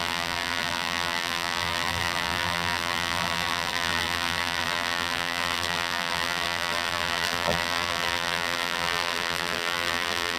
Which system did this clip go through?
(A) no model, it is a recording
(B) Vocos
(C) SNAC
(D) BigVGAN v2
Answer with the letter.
D